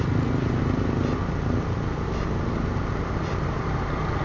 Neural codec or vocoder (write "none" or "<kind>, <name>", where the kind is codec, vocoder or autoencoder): none